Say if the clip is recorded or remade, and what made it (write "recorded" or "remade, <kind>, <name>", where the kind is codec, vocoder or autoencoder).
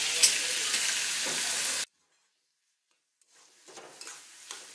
recorded